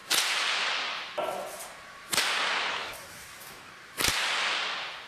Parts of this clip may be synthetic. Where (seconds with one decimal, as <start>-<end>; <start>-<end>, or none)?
2.7-3.7